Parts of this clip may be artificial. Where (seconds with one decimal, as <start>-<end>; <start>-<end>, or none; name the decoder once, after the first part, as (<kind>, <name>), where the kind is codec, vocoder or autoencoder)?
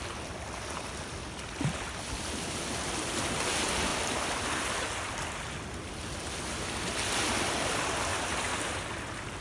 3.9-4.7 (vocoder, BigVGAN v2); 8.1-8.8